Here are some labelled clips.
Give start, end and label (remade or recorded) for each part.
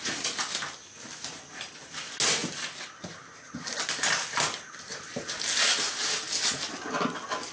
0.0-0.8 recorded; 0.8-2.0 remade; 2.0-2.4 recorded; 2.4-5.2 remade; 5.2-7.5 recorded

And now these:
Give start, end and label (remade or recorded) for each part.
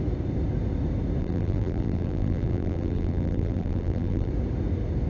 0.0-1.2 recorded; 1.2-4.3 remade; 4.3-5.1 recorded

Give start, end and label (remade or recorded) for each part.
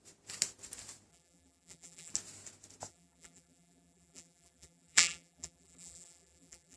0.0-1.1 recorded; 1.1-2.1 remade; 2.1-2.9 recorded; 2.9-6.8 remade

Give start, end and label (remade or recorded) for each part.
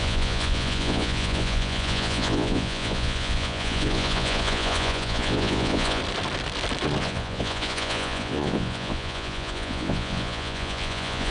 0.0-6.0 remade; 6.0-7.0 recorded; 7.0-11.3 remade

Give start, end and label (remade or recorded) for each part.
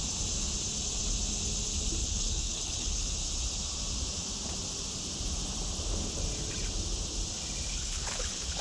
0.0-2.0 recorded; 2.0-3.1 remade; 3.1-7.7 recorded; 7.7-8.6 remade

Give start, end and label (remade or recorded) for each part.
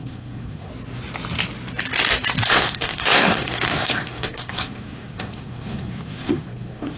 0.0-0.7 remade; 0.7-2.5 recorded; 2.5-7.0 remade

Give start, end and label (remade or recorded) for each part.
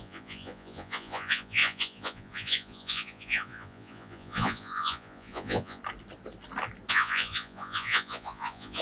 0.0-5.8 remade; 5.8-6.9 recorded; 6.9-8.8 remade